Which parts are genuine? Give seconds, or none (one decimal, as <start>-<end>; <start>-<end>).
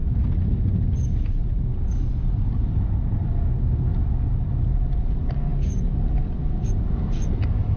0.0-2.0; 5.5-6.1